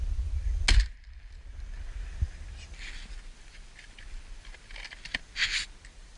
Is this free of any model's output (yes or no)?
yes